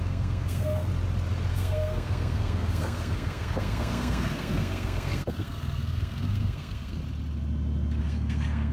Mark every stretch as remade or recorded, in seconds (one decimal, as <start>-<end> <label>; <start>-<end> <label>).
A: 0.0-0.9 remade; 0.9-1.5 recorded; 1.5-7.0 remade; 7.0-8.0 recorded; 8.0-8.7 remade